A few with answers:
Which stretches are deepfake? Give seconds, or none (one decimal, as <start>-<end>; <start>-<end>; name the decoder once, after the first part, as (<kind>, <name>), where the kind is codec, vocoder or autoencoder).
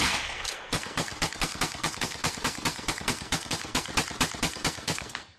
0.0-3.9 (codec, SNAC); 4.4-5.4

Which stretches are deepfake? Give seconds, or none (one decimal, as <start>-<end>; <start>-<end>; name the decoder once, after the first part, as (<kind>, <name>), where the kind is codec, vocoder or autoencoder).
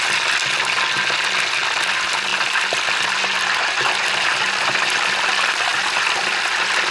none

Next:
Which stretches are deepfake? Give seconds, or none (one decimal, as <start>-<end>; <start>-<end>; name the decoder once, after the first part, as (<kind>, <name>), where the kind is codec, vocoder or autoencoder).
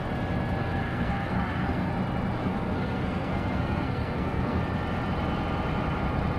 0.6-1.9 (codec, SNAC); 2.4-4.6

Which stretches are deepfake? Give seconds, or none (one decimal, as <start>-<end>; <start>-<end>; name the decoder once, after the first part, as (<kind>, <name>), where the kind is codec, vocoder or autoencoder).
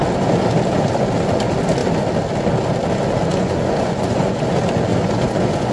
3.3-4.4 (vocoder, Vocos); 4.9-5.7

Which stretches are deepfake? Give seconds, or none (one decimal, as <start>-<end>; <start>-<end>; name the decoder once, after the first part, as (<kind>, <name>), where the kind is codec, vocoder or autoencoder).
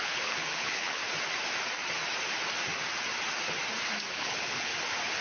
0.0-1.0 (codec, HILCodec); 4.1-4.7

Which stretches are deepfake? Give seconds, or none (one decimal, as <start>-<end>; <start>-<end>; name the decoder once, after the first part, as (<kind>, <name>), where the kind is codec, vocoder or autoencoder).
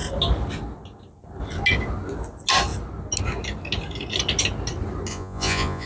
5.1-5.9 (vocoder, Vocos)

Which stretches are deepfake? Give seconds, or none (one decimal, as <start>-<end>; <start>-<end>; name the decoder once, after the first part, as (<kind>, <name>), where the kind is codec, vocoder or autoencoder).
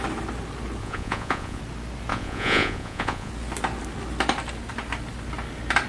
0.8-1.6 (vocoder, Vocos); 2.1-3.3